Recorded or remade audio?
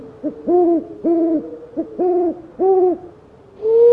recorded